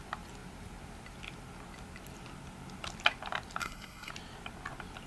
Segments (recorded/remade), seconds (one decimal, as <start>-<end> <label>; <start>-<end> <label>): 0.0-3.6 recorded; 3.6-4.1 remade; 4.1-5.1 recorded